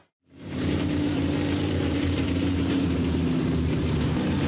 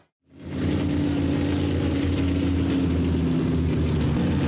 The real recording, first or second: second